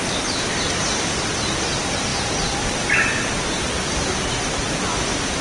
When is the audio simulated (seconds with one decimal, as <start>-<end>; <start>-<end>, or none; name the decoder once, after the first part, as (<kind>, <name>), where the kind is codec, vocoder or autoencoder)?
none